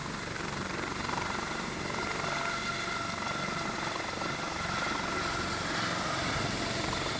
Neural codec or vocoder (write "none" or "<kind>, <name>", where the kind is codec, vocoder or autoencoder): none